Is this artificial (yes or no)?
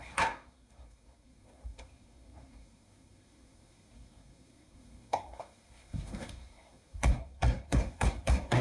yes